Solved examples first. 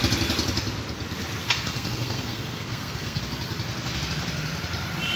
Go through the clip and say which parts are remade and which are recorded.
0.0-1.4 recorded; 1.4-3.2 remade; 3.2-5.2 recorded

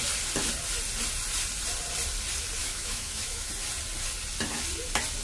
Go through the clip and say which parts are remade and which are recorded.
0.0-2.6 recorded; 2.6-3.5 remade; 3.5-5.2 recorded

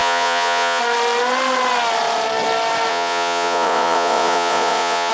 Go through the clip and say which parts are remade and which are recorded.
0.0-0.8 remade; 0.8-2.9 recorded; 2.9-5.1 remade

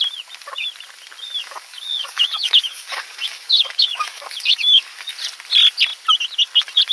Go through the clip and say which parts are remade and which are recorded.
0.0-1.4 recorded; 1.4-5.1 remade; 5.1-6.9 recorded